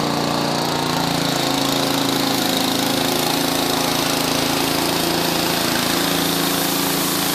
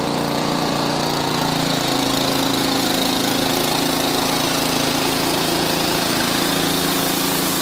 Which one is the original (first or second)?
first